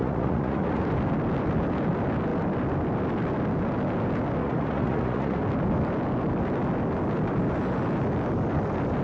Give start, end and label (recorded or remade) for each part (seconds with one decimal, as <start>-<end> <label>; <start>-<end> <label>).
0.0-0.8 remade; 0.8-4.4 recorded; 4.4-5.4 remade; 5.4-9.0 recorded